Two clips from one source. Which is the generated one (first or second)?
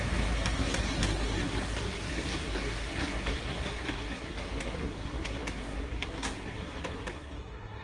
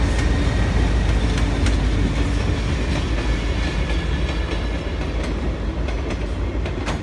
first